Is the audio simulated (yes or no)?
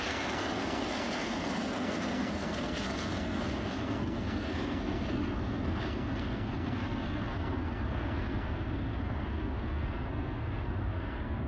yes